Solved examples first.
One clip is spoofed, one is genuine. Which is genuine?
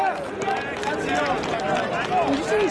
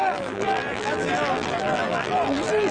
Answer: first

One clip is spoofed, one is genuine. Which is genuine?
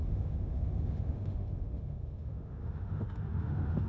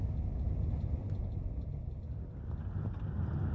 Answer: second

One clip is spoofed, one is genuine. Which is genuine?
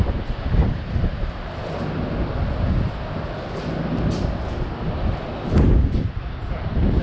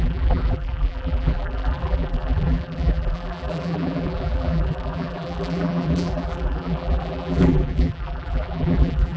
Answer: first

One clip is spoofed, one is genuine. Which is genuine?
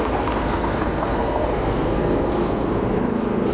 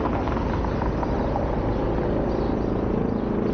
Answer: second